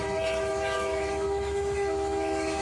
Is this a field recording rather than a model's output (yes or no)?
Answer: no